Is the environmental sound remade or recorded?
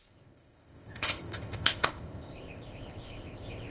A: remade